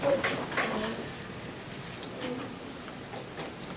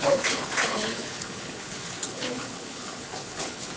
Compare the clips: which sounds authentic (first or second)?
first